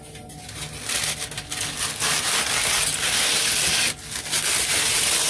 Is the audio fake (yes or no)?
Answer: no